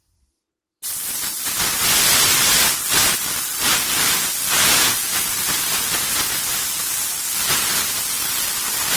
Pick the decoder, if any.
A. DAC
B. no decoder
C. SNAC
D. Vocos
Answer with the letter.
B